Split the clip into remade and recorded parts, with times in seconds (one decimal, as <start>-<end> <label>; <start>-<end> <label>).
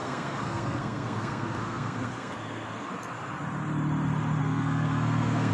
0.0-2.9 remade; 2.9-4.4 recorded; 4.4-5.5 remade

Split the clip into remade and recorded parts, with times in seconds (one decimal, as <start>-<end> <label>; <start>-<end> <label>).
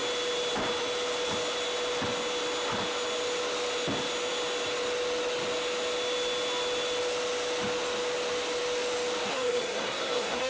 0.0-9.3 recorded; 9.3-10.5 remade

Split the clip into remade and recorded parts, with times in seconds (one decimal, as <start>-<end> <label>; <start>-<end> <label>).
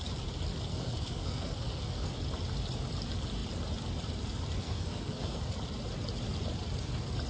0.0-0.7 recorded; 0.7-2.1 remade; 2.1-4.6 recorded; 4.6-5.5 remade; 5.5-7.3 recorded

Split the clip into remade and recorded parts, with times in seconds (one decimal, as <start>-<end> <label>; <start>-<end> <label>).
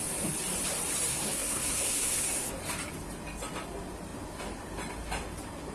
0.0-1.1 recorded; 1.1-2.5 remade; 2.5-5.7 recorded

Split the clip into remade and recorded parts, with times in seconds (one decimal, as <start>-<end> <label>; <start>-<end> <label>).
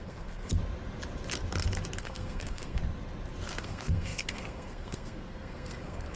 0.0-0.5 remade; 0.5-2.0 recorded; 2.0-2.8 remade; 2.8-3.6 recorded; 3.6-6.2 remade